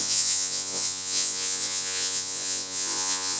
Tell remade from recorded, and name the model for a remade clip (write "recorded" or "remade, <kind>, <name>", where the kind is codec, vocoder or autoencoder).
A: remade, vocoder, Vocos